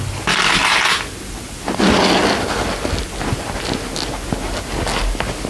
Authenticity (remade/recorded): recorded